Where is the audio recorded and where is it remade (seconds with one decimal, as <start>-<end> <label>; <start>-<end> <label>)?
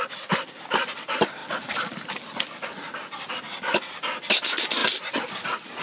0.0-5.8 recorded